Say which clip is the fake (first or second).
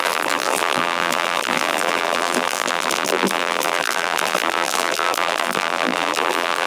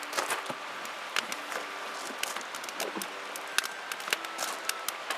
first